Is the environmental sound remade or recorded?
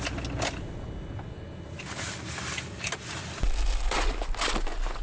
recorded